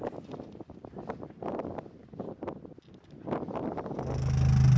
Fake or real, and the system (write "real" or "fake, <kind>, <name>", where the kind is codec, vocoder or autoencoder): real